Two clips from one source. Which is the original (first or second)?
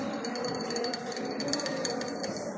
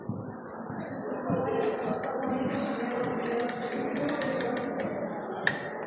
second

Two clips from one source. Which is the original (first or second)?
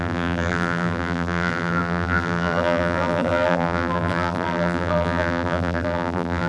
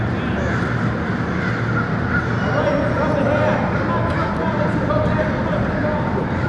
second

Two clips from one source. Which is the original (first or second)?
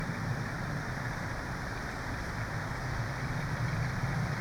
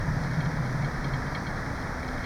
second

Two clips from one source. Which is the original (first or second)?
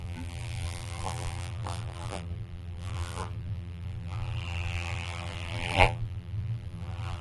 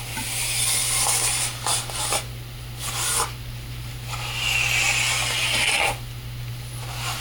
second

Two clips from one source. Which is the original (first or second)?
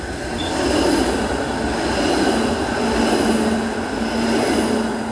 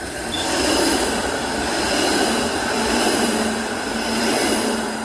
first